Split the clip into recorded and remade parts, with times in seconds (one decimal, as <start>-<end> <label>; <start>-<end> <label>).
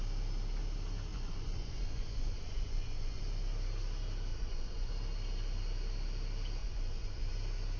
0.0-1.1 recorded; 1.1-3.2 remade; 3.2-4.3 recorded; 4.3-4.9 remade; 4.9-6.6 recorded; 6.6-7.3 remade; 7.3-7.8 recorded